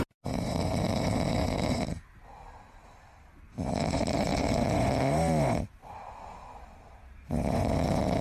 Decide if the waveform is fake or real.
real